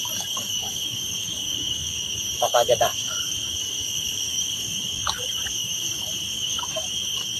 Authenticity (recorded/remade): remade